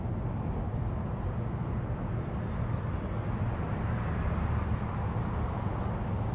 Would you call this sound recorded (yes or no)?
yes